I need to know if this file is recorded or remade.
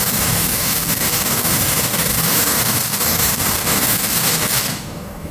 remade